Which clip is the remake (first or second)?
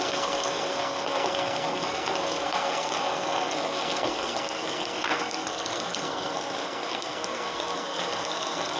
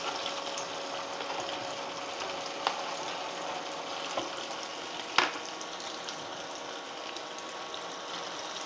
first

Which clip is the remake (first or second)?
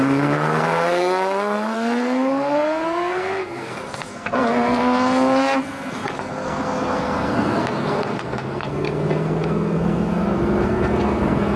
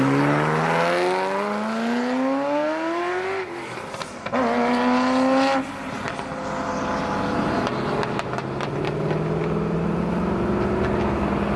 first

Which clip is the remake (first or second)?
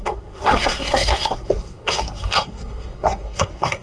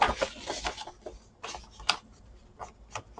first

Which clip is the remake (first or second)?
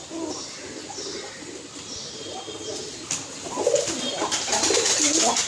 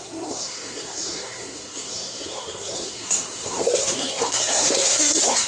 second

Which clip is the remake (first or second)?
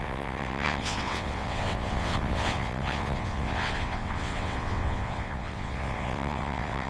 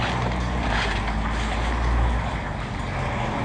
first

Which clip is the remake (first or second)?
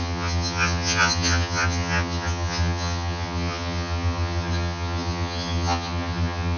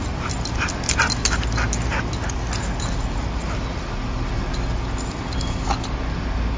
first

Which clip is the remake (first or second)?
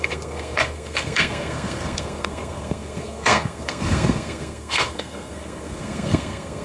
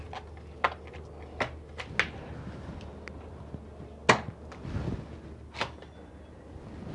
first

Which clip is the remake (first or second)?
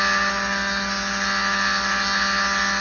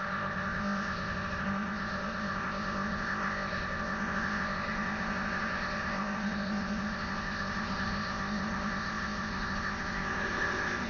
second